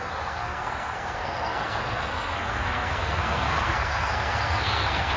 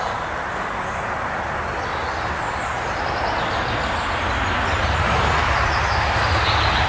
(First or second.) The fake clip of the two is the first